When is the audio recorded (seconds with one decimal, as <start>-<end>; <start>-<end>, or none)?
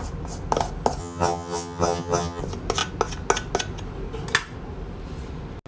0.0-1.0; 2.4-5.7